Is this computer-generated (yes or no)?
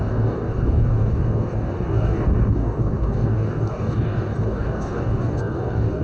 yes